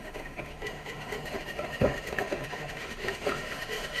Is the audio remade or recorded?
remade